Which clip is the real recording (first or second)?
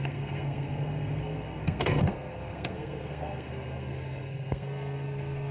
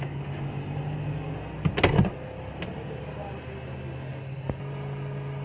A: second